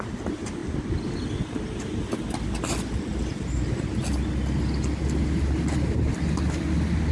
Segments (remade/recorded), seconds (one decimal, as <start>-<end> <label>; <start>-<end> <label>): 0.0-7.1 recorded